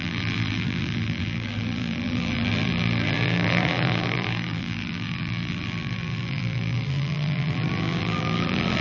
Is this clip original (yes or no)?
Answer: no